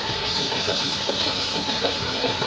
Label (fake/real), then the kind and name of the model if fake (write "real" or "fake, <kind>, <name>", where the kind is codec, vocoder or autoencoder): fake, codec, SNAC